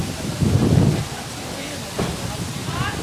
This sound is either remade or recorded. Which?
recorded